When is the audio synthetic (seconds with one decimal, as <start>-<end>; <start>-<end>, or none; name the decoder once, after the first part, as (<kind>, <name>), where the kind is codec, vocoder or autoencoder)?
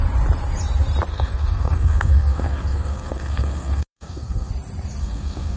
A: 1.1-4.5 (codec, SNAC); 5.0-5.6